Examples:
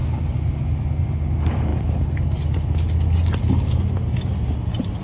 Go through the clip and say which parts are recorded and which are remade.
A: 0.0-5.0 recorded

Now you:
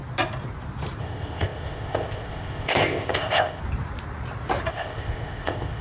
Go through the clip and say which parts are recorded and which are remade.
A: 0.0-1.0 recorded; 1.0-3.6 remade; 3.6-4.7 recorded; 4.7-5.8 remade

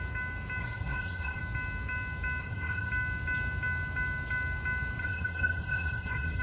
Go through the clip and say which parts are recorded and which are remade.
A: 0.0-0.6 recorded; 0.6-1.4 remade; 1.4-2.4 recorded; 2.4-2.9 remade; 2.9-5.0 recorded; 5.0-6.4 remade